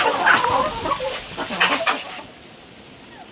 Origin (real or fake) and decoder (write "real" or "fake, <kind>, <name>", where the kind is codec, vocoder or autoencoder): real